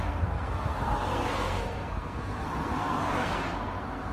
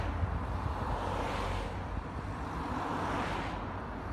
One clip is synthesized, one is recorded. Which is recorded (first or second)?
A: second